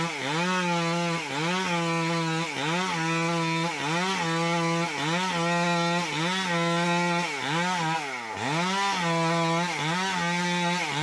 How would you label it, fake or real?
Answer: real